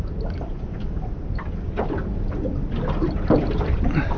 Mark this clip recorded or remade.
recorded